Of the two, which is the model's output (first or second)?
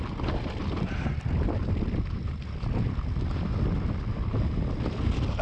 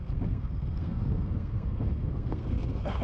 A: second